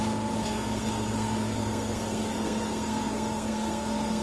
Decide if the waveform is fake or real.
fake